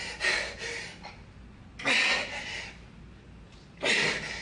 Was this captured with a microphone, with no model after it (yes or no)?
yes